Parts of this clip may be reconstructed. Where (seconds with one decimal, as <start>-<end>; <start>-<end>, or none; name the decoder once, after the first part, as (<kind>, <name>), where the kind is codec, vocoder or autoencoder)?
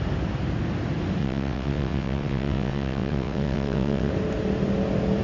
1.2-4.1 (vocoder, WaveNeXt)